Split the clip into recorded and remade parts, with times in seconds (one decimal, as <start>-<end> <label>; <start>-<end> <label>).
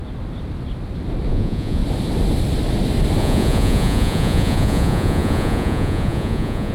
0.0-1.3 recorded; 1.3-1.8 remade; 1.8-3.2 recorded; 3.2-6.7 remade